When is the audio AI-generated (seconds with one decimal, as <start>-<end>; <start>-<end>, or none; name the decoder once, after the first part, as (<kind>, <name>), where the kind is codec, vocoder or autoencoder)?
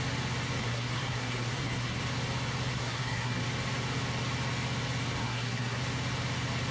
0.6-2.0 (codec, SNAC); 2.7-3.4; 5.2-5.8